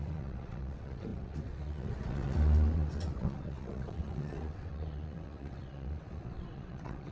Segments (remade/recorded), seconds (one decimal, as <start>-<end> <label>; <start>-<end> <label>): 0.0-7.1 remade